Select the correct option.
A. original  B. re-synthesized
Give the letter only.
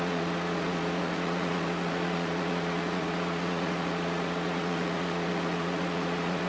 B